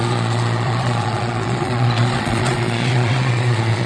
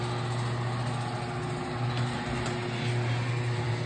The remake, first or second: first